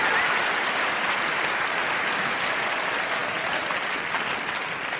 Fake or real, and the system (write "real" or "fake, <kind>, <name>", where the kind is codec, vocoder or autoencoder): real